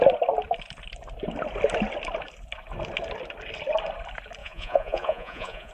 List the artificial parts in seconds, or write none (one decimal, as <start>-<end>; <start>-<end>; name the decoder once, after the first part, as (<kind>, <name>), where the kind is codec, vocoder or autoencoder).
4.4-5.7 (vocoder, Vocos)

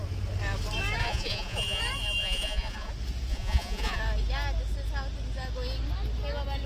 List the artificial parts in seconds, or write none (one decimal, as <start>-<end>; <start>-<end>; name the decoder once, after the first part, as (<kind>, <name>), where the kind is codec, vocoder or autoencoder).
1.0-1.8 (vocoder, Vocos); 2.2-2.9; 3.3-4.0

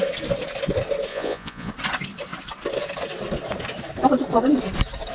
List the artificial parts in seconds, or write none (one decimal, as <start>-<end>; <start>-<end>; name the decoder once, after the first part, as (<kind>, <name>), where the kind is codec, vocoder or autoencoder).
1.1-1.7 (vocoder, Vocos)

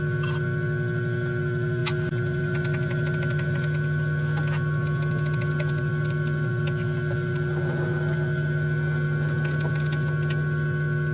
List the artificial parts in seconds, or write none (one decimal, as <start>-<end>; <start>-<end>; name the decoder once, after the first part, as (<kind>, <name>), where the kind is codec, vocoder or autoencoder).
none

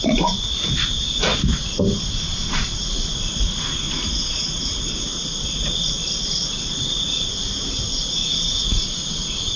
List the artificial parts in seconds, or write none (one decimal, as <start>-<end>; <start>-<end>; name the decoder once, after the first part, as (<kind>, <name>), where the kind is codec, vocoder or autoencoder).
0.0-1.3 (vocoder, Vocos); 2.2-2.8; 3.4-5.1; 8.1-9.6

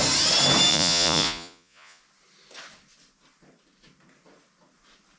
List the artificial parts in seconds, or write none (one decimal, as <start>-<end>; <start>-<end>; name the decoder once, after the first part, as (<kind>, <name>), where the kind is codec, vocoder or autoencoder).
0.7-2.0 (vocoder, Vocos)

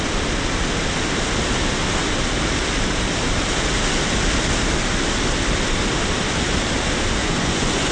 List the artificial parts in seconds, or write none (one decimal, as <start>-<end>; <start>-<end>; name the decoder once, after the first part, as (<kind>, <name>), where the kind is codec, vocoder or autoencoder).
7.2-7.9 (vocoder, Vocos)

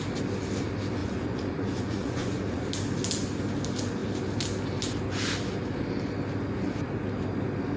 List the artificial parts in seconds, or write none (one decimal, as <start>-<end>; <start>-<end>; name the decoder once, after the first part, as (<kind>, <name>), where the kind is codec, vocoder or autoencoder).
1.0-2.6 (vocoder, Vocos)